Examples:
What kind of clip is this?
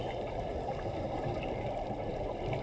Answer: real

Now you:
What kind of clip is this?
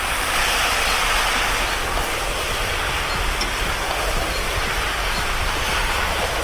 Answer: real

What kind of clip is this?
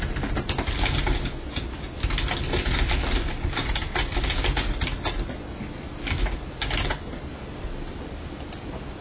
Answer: real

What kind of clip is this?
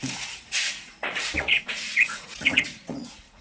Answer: fake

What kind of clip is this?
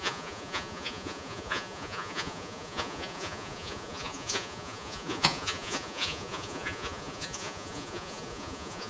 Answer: fake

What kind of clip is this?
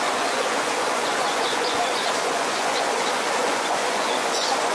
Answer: fake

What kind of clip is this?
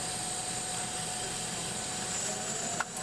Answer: real